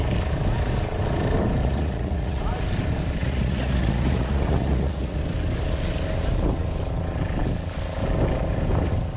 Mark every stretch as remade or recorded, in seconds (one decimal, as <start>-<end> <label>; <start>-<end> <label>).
0.0-1.6 recorded; 1.6-2.4 remade; 2.4-3.2 recorded; 3.2-5.2 remade; 5.2-9.2 recorded